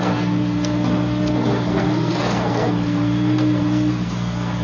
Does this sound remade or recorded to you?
remade